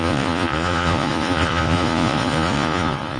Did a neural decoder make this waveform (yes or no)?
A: yes